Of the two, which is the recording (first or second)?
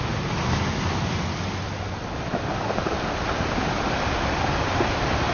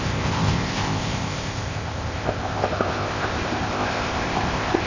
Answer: first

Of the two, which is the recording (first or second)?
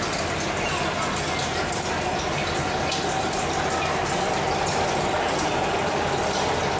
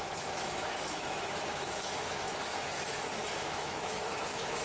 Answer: first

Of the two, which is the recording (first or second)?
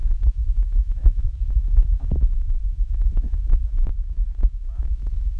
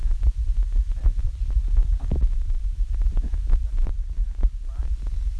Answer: second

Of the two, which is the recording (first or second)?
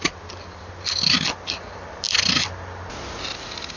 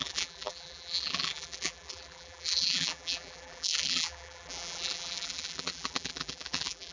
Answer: first